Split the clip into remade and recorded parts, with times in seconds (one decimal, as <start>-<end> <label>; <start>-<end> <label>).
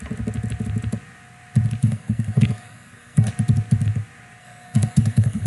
0.0-1.8 recorded; 1.8-3.3 remade; 3.3-4.4 recorded; 4.4-5.5 remade